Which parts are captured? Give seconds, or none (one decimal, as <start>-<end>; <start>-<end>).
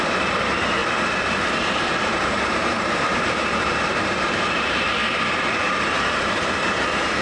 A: 0.8-1.4; 5.0-5.8